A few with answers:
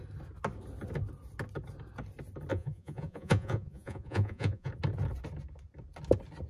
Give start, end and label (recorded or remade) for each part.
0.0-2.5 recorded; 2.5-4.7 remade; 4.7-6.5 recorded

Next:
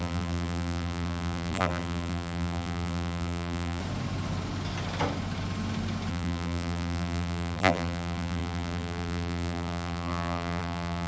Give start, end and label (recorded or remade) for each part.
0.0-3.8 remade; 3.8-6.1 recorded; 6.1-11.1 remade

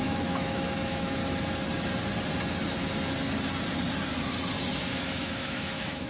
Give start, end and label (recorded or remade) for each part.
0.0-1.2 remade; 1.2-4.9 recorded; 4.9-6.1 remade

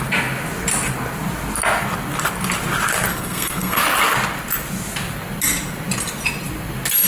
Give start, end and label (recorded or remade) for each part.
0.0-3.1 recorded; 3.1-3.8 remade; 3.8-7.1 recorded

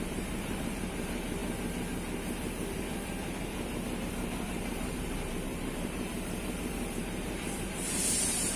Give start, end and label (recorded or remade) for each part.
0.0-1.4 remade; 1.4-4.1 recorded; 4.1-8.6 remade

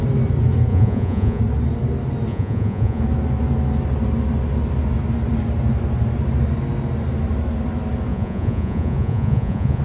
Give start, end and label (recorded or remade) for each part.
0.0-0.7 recorded; 0.7-1.4 remade; 1.4-2.3 recorded; 2.3-3.0 remade; 3.0-8.1 recorded; 8.1-9.8 remade

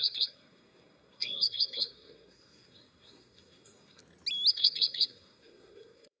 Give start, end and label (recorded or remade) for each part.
0.0-4.0 remade; 4.0-4.5 recorded; 4.5-6.2 remade